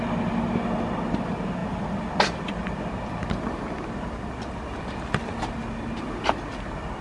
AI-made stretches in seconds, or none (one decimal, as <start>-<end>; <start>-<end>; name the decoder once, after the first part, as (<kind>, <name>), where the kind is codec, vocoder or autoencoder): none

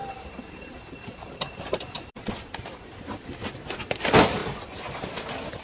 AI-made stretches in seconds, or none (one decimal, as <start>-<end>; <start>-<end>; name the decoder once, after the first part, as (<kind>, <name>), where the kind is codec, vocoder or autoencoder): 0.0-3.4 (vocoder, BigVGAN v2); 3.9-4.4

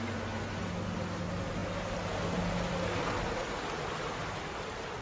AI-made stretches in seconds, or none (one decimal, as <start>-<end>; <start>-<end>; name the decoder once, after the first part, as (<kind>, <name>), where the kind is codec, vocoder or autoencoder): none

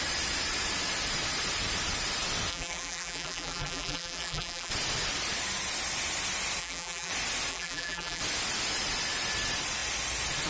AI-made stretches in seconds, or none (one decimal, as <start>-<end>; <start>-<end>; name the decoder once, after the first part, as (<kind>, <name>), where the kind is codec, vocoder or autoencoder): 2.5-4.7 (vocoder, BigVGAN v2); 6.6-7.1; 7.5-8.2